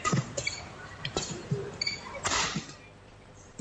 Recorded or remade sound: remade